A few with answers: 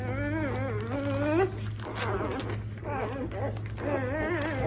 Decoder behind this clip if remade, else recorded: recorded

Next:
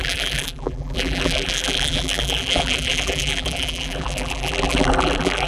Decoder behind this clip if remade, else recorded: remade, vocoder, BigVGAN v2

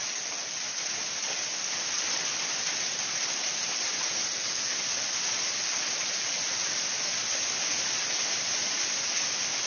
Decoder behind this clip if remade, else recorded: recorded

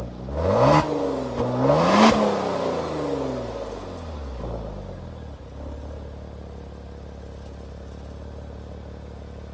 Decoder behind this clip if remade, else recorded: recorded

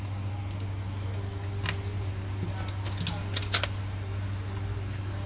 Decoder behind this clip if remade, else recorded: recorded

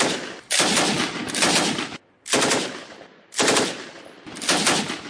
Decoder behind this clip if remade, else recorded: remade, vocoder, BigVGAN v2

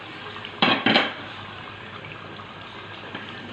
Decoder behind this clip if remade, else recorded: remade, vocoder, BigVGAN v2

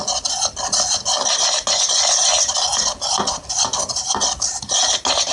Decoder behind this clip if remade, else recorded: recorded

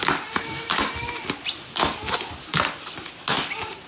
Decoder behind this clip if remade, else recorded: recorded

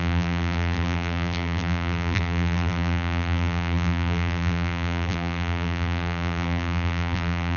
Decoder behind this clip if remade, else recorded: remade, vocoder, BigVGAN v2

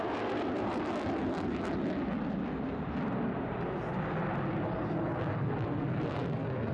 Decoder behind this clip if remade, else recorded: recorded